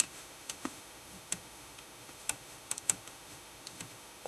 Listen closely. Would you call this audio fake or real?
fake